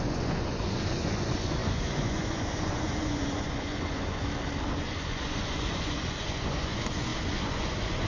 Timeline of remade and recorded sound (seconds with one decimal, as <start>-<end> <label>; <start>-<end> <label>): 0.0-4.2 remade; 4.2-4.8 recorded; 4.8-8.1 remade